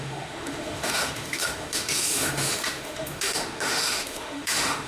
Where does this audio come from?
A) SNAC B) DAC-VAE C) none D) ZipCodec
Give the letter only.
B